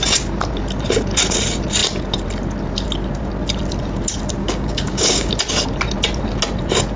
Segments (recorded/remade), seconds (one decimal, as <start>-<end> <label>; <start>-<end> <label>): 0.0-4.4 recorded; 4.4-5.3 remade; 5.3-7.0 recorded